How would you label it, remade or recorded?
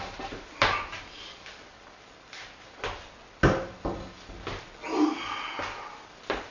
recorded